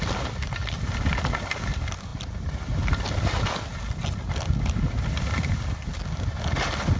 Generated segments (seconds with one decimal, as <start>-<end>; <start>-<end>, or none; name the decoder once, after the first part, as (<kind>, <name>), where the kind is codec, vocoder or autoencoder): none